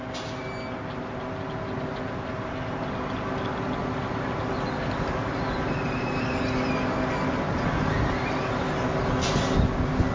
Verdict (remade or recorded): recorded